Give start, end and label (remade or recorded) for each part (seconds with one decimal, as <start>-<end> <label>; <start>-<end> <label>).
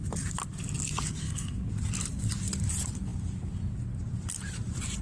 0.0-1.2 recorded; 1.2-1.7 remade; 1.7-5.0 recorded